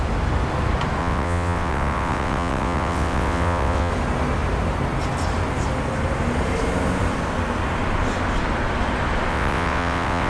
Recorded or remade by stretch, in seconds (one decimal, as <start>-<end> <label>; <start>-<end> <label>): 0.0-1.0 recorded; 1.0-3.9 remade; 3.9-9.3 recorded; 9.3-10.3 remade